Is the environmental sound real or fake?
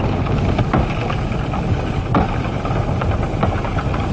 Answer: real